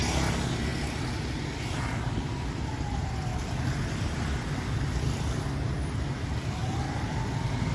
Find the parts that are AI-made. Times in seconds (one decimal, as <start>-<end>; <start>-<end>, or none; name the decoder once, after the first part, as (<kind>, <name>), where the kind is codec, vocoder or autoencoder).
none